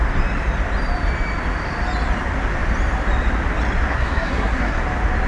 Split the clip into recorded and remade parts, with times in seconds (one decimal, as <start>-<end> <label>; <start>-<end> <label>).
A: 0.0-3.9 recorded; 3.9-4.8 remade; 4.8-5.3 recorded